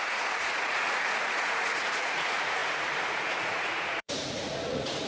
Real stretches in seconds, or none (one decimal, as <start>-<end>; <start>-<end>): none